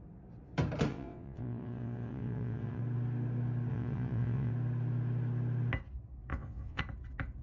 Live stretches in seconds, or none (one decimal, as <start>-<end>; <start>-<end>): 0.0-0.9; 2.8-3.7; 4.5-6.3; 6.8-7.4